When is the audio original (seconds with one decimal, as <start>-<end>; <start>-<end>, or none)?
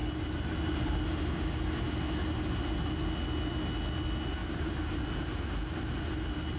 1.0-4.4; 5.4-6.6